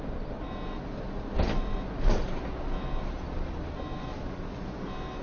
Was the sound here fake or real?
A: real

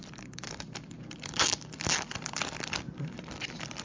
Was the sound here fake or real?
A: fake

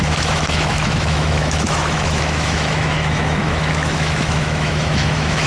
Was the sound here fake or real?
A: fake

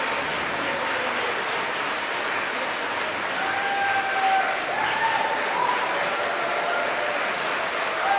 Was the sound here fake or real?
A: real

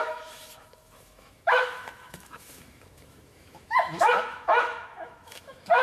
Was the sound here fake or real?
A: fake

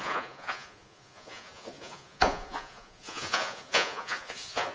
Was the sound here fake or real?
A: fake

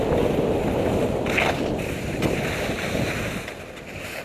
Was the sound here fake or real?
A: real